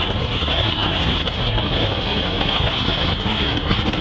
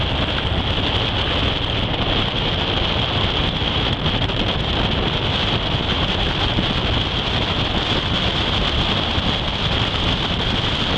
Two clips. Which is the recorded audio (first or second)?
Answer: second